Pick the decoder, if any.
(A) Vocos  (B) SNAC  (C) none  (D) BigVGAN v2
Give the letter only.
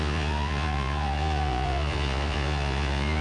A